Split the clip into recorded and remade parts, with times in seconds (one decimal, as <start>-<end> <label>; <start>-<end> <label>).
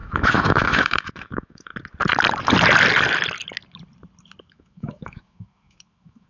0.0-1.7 remade; 1.7-4.4 recorded; 4.4-6.3 remade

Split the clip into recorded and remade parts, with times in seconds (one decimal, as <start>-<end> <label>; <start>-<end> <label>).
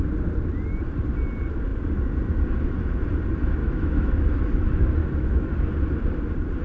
0.0-3.6 recorded; 3.6-4.4 remade; 4.4-5.0 recorded; 5.0-5.5 remade; 5.5-6.6 recorded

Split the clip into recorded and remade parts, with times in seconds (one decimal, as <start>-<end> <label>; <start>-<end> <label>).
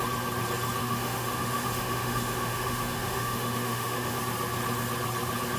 0.0-0.8 recorded; 0.8-4.2 remade; 4.2-5.6 recorded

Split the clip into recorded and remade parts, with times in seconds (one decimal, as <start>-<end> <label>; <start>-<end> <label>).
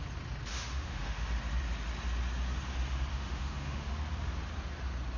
0.0-0.5 recorded; 0.5-1.3 remade; 1.3-3.1 recorded; 3.1-3.9 remade; 3.9-5.2 recorded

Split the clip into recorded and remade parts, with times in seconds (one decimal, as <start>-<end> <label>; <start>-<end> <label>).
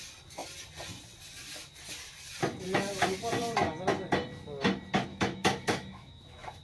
0.0-5.1 recorded; 5.1-6.6 remade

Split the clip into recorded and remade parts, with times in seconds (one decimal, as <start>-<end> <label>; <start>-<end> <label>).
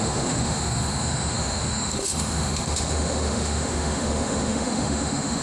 0.0-5.4 remade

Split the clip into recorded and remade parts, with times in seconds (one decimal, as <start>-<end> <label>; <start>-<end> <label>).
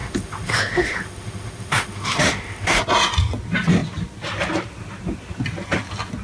0.0-2.8 remade; 2.8-6.2 recorded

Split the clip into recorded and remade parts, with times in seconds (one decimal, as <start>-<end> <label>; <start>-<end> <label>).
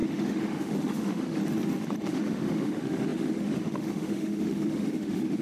0.0-1.4 remade; 1.4-2.1 recorded; 2.1-5.4 remade